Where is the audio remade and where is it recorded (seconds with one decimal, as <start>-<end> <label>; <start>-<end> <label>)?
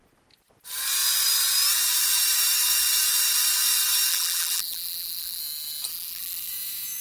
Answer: 0.0-4.1 recorded; 4.1-5.4 remade; 5.4-5.9 recorded; 5.9-6.5 remade; 6.5-7.0 recorded